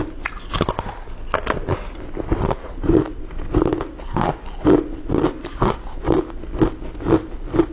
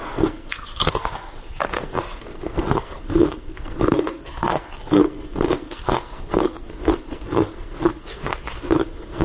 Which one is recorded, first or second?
first